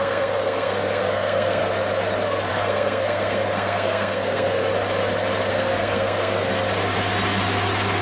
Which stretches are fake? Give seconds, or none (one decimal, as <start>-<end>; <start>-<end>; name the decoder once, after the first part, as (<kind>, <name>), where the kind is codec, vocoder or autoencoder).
0.0-1.6 (codec, SNAC); 2.5-4.7; 5.5-6.5